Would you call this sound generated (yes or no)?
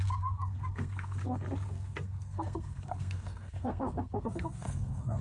yes